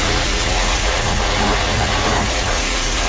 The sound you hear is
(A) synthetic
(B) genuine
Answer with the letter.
A